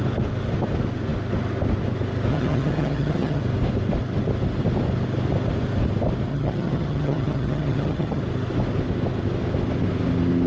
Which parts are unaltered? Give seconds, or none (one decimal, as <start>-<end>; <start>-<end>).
0.0-2.3; 3.4-6.3; 8.2-10.5